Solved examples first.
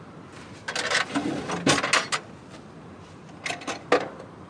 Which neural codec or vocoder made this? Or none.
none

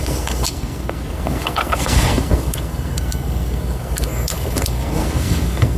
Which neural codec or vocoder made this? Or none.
codec, SNAC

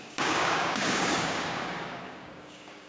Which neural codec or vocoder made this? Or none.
codec, DAC